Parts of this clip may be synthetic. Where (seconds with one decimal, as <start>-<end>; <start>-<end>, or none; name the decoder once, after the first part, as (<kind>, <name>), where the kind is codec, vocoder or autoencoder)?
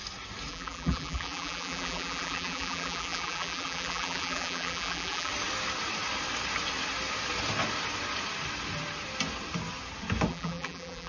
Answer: 0.5-5.3 (vocoder, BigVGAN v2); 10.3-11.1